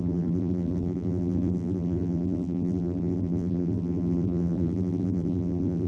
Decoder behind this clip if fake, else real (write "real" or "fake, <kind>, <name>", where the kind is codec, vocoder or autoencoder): fake, vocoder, BigVGAN v2